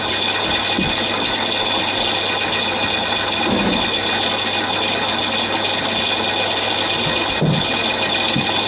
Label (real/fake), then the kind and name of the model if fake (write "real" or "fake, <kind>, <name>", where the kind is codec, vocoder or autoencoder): real